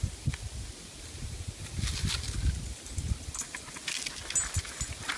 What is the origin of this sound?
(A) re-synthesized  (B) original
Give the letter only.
B